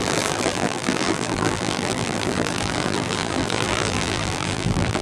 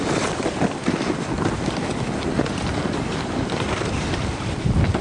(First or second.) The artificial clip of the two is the first